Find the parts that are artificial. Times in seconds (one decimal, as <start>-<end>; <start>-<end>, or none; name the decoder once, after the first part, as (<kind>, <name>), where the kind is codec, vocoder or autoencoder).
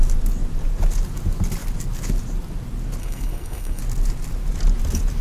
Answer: 3.0-3.8 (codec, SNAC)